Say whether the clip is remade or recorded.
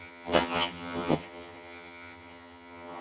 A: remade